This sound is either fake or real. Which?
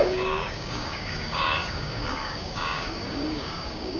fake